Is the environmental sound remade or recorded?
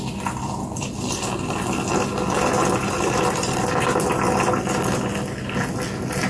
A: recorded